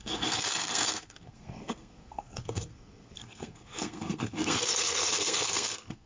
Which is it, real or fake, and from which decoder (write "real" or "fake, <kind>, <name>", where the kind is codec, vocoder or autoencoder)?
fake, codec, SNAC